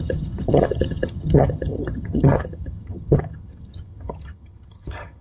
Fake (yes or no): yes